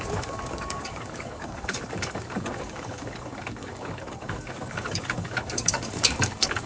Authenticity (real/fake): fake